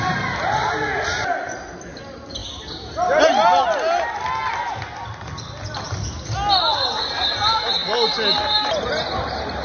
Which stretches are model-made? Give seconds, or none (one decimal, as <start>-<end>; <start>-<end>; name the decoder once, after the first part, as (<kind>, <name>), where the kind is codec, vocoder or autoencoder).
none